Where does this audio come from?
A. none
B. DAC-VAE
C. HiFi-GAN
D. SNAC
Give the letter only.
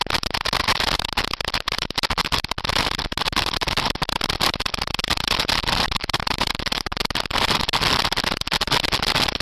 A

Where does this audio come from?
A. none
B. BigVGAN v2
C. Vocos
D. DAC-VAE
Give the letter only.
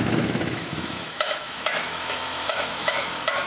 D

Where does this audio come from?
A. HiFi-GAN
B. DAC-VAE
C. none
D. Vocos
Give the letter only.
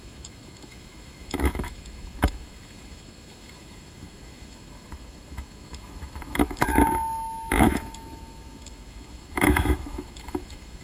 B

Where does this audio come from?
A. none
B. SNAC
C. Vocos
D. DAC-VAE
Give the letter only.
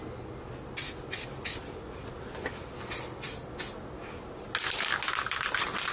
A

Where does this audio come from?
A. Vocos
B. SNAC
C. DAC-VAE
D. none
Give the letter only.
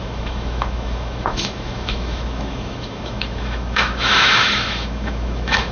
C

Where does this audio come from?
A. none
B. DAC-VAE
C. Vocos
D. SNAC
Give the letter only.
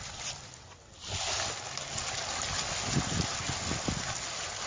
A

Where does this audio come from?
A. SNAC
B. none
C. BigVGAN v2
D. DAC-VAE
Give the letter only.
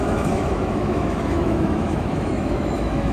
D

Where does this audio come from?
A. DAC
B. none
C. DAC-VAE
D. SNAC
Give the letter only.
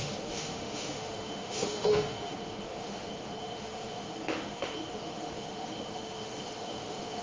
C